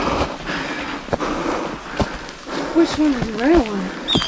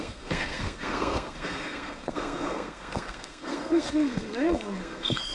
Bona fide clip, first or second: first